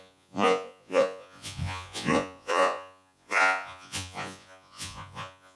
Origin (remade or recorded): remade